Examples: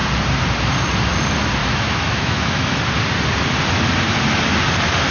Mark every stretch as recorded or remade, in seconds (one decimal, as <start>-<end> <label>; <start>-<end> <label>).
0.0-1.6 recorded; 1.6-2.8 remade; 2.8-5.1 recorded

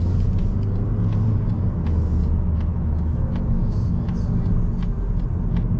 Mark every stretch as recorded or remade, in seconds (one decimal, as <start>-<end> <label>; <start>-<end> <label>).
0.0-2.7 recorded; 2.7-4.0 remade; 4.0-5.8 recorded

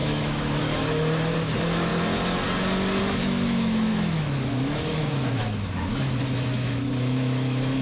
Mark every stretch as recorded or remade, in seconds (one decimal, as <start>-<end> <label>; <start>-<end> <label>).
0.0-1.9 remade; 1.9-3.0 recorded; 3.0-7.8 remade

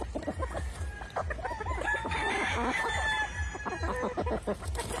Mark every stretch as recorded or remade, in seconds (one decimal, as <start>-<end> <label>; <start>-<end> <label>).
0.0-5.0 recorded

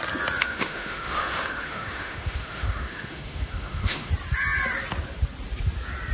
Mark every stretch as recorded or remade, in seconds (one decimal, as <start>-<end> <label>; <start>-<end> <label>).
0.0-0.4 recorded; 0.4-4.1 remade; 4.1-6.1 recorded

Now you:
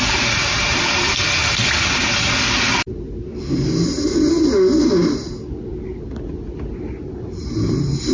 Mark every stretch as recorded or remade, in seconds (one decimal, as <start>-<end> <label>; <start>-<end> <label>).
0.0-8.1 recorded

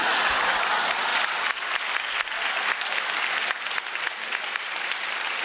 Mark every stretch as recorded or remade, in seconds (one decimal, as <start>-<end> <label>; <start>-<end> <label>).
0.0-5.4 recorded